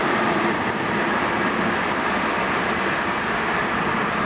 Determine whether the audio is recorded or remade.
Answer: recorded